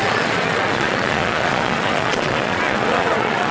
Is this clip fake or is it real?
fake